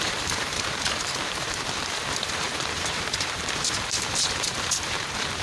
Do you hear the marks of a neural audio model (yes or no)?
yes